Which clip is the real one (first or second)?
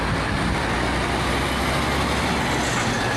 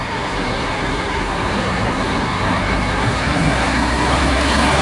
first